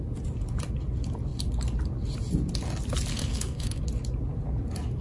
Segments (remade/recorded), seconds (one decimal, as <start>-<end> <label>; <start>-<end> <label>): 0.0-3.1 recorded; 3.1-3.8 remade; 3.8-5.0 recorded